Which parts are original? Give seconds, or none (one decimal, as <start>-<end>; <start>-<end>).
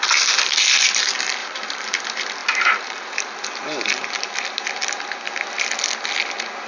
0.0-1.4; 2.0-2.4; 4.3-6.7